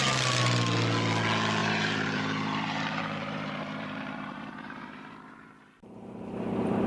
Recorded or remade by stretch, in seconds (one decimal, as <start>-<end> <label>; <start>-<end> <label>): 0.0-1.6 recorded; 1.6-5.7 remade; 5.7-6.9 recorded